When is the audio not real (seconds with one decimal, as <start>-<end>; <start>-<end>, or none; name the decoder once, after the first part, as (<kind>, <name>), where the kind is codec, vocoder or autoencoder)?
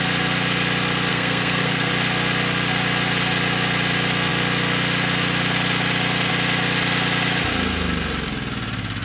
1.1-1.9 (codec, SNAC)